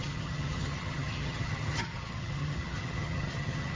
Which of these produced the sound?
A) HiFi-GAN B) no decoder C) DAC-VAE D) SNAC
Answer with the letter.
A